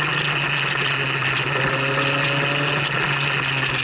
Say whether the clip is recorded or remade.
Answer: recorded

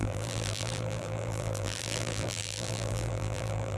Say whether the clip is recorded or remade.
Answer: remade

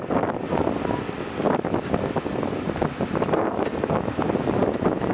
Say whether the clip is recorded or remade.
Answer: recorded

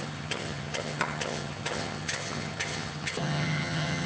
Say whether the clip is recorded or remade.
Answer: remade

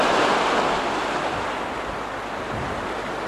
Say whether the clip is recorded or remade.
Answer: recorded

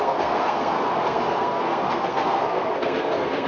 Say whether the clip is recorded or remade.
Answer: remade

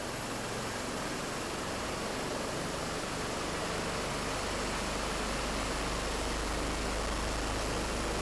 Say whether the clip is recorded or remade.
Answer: recorded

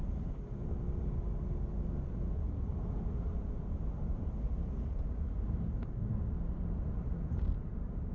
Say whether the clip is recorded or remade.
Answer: recorded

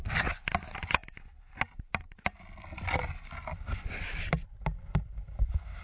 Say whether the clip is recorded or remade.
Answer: recorded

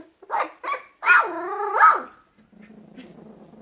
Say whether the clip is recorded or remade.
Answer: recorded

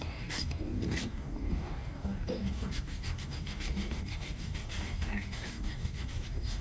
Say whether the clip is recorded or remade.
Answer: remade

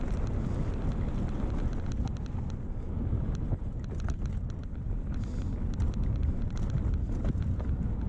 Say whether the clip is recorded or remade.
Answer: recorded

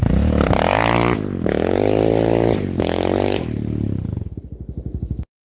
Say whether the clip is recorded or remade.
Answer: recorded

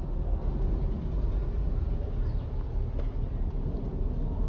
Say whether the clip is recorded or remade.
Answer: recorded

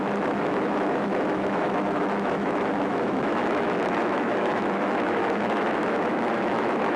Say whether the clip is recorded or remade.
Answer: remade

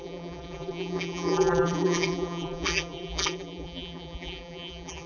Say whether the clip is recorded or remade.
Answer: remade